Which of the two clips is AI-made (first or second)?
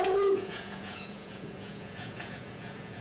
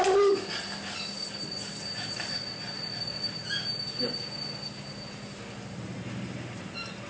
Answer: first